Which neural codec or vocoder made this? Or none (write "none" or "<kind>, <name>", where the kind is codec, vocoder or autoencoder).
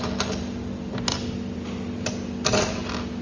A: none